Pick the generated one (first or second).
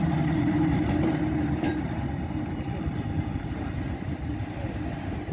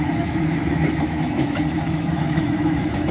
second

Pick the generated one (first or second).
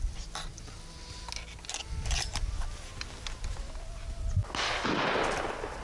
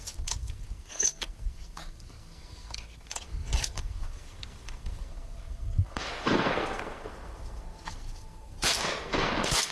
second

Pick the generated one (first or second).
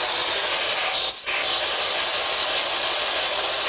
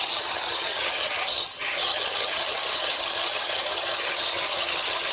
second